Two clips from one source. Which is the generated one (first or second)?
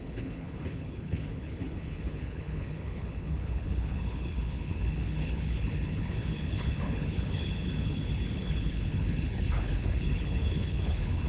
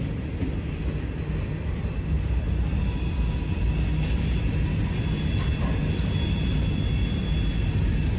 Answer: first